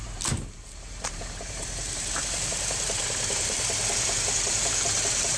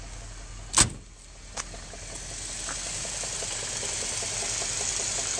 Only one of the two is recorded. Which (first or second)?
second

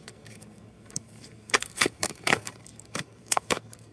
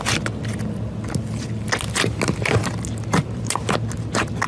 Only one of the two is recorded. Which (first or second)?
second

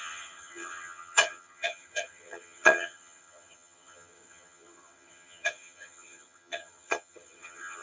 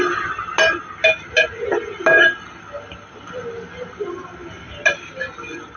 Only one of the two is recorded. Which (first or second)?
second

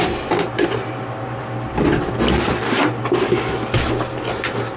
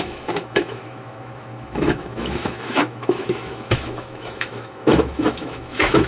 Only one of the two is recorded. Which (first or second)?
first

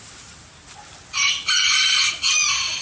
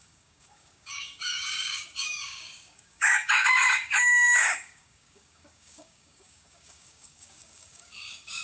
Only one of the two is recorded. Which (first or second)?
first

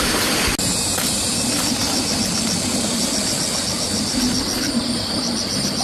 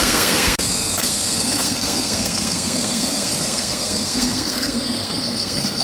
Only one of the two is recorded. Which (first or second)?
first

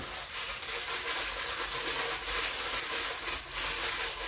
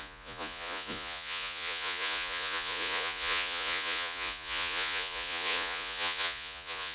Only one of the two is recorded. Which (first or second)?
first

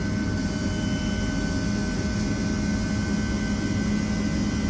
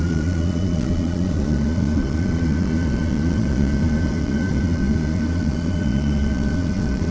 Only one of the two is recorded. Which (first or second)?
first